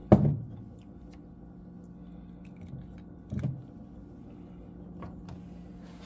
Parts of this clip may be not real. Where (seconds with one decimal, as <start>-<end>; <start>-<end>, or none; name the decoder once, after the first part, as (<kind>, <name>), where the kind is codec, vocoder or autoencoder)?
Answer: none